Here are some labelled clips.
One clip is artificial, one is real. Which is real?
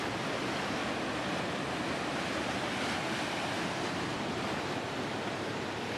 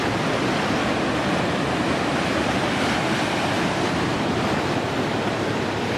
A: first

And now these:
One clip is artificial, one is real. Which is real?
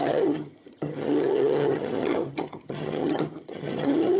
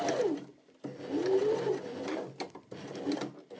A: second